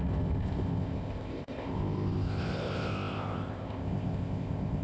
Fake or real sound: fake